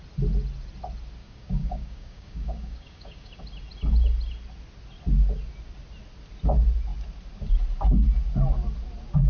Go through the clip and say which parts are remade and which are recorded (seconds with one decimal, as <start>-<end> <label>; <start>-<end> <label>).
0.0-1.2 recorded; 1.2-3.3 remade; 3.3-9.3 recorded